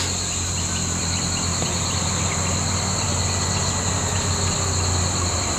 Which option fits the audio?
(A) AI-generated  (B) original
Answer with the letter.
B